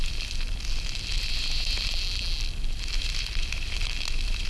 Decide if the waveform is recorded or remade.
recorded